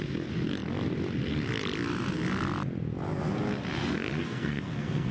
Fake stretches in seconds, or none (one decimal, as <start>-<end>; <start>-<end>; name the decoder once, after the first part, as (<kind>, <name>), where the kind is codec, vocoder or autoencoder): 4.2-5.1 (codec, SNAC)